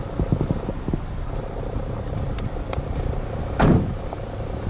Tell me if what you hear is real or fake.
real